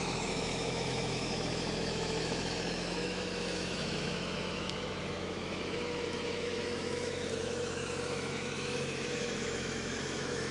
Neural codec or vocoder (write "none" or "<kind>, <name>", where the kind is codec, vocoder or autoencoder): autoencoder, DAC-VAE